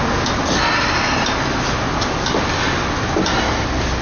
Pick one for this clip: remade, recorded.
recorded